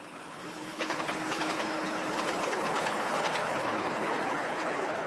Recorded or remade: remade